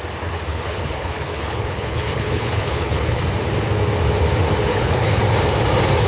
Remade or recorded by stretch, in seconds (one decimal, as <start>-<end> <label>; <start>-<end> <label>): 0.0-0.5 recorded; 0.5-3.2 remade; 3.2-4.7 recorded; 4.7-5.2 remade; 5.2-6.1 recorded